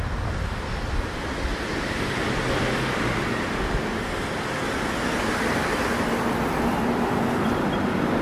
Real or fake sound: fake